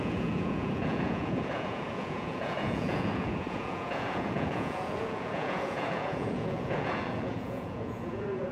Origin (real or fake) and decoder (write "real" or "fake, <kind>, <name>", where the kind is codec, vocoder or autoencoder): fake, vocoder, Vocos